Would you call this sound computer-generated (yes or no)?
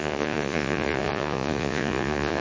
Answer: yes